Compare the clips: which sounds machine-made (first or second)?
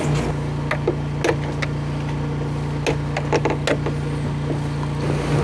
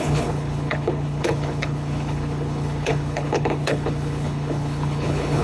second